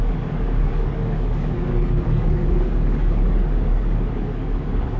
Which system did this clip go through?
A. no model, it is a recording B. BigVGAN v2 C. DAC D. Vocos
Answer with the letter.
C